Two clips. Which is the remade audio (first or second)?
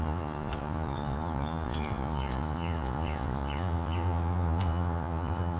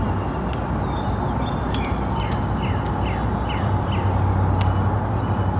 first